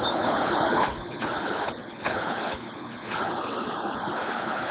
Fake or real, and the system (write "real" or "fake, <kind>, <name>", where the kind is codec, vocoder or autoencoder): fake, codec, HILCodec